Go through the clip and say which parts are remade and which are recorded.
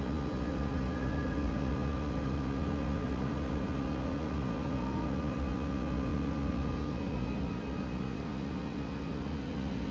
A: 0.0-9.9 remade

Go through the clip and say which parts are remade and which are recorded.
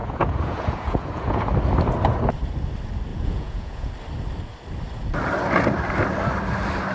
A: 0.0-1.4 remade; 1.4-3.1 recorded; 3.1-3.9 remade; 3.9-6.9 recorded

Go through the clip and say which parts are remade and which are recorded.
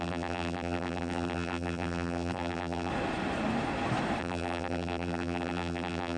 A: 0.0-2.9 remade; 2.9-4.2 recorded; 4.2-6.2 remade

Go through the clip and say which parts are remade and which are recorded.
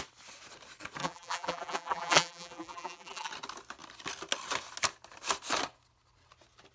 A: 0.0-1.0 recorded; 1.0-3.3 remade; 3.3-6.7 recorded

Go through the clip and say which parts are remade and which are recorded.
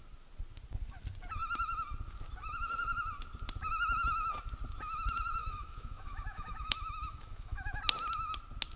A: 0.0-5.4 recorded; 5.4-7.8 remade; 7.8-8.8 recorded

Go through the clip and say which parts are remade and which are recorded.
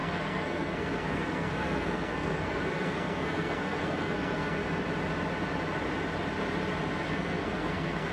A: 0.0-4.6 remade; 4.6-7.1 recorded; 7.1-8.1 remade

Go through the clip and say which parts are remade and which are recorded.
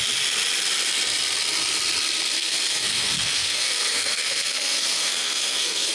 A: 0.0-2.4 recorded; 2.4-5.9 remade